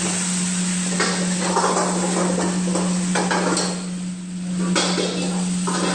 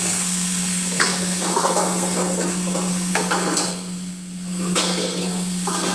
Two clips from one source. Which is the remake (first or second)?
second